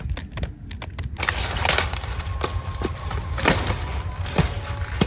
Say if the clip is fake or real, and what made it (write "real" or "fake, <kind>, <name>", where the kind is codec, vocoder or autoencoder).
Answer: real